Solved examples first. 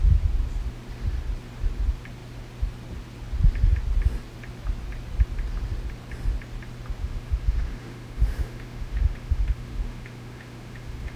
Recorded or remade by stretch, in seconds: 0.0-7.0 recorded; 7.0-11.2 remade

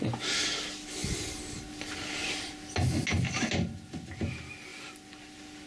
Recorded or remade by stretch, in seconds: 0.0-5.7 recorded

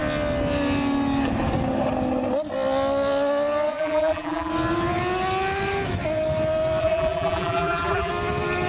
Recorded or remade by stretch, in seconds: 0.0-3.7 recorded; 3.7-4.5 remade; 4.5-6.8 recorded; 6.8-8.1 remade; 8.1-8.7 recorded